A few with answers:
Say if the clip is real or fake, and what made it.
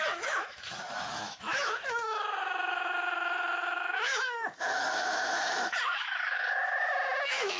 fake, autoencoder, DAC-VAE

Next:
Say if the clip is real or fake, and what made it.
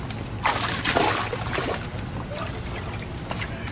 real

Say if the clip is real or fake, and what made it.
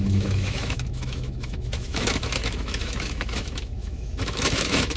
fake, autoencoder, DAC-VAE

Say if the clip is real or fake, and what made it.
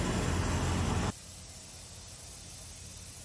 real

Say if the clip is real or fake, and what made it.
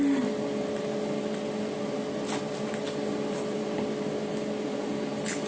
real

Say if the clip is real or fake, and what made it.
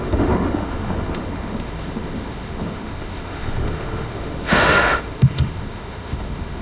fake, autoencoder, DAC-VAE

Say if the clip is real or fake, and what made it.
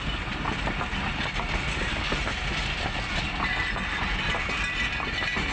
real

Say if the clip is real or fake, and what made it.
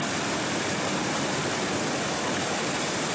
real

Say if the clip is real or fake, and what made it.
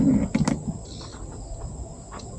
real